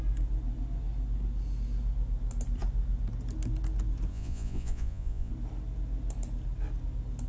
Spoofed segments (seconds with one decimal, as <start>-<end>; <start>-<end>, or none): 4.1-5.3